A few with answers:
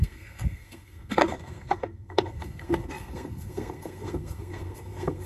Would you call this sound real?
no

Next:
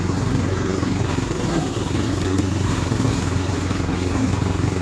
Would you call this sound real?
no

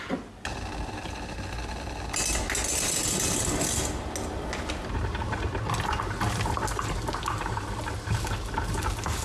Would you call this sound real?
yes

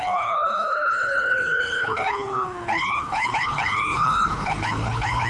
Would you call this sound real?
no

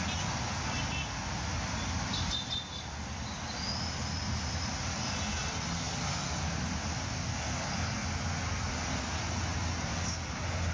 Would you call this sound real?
yes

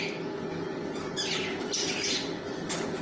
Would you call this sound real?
yes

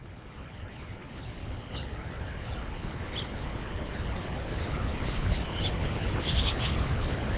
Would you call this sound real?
no